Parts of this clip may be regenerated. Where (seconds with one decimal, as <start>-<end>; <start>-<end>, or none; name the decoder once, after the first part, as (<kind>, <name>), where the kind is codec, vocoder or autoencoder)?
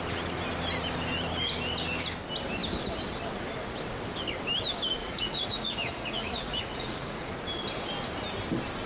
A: 5.0-7.3 (vocoder, Vocos)